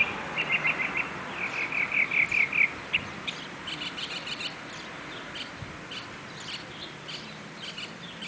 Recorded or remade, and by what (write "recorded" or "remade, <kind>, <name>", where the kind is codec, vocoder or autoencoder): recorded